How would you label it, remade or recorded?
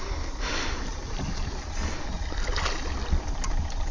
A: recorded